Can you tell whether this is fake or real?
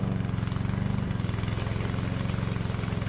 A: real